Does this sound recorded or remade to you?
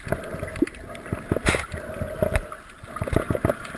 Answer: recorded